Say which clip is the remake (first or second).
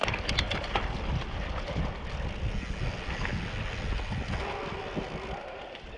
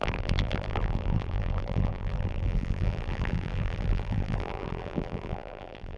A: second